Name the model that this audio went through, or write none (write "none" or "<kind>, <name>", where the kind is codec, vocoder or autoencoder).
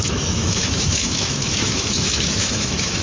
autoencoder, DAC-VAE